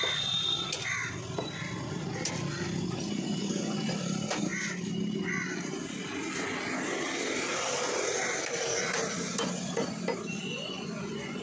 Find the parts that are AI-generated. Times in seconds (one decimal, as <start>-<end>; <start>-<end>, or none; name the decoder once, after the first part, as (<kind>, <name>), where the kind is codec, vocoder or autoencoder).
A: 3.3-3.9 (vocoder, Vocos); 10.4-11.4

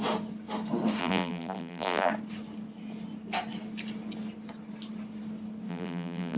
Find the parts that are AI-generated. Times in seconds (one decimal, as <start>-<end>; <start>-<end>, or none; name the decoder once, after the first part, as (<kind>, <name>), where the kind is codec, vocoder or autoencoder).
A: 1.0-2.1 (vocoder, BigVGAN v2); 5.7-6.4

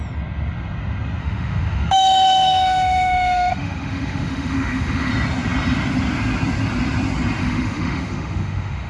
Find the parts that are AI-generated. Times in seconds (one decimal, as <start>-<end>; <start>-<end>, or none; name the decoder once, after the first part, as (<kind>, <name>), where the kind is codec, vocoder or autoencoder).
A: 1.2-5.1 (autoencoder, DAC-VAE); 7.4-8.9

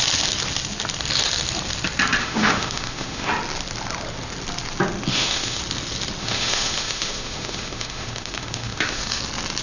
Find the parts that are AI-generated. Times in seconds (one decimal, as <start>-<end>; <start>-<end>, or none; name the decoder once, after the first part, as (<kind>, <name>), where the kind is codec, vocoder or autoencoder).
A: 2.2-3.3 (autoencoder, DAC-VAE); 5.1-5.6; 6.2-9.2

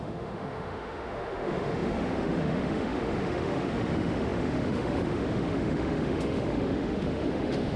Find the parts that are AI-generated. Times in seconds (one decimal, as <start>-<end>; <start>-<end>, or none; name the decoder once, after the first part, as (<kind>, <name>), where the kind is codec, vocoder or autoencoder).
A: 0.0-7.8 (autoencoder, DAC-VAE)

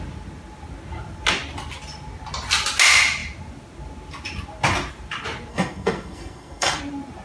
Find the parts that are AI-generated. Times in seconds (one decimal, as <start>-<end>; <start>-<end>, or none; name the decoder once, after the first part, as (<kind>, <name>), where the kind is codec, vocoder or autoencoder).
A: 5.5-6.8 (codec, SNAC)

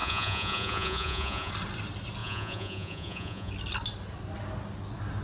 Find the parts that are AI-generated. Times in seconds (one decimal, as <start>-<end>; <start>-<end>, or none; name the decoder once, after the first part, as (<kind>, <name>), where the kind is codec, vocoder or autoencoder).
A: 0.0-1.5 (vocoder, Vocos); 2.2-3.5

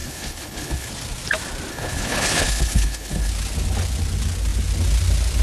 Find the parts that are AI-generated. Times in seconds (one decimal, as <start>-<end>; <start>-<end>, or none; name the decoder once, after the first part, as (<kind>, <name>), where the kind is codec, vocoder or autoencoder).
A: 0.0-0.9 (codec, HILCodec); 1.7-3.3